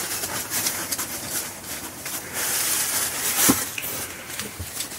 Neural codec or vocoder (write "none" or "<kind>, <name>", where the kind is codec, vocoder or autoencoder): vocoder, BigVGAN v2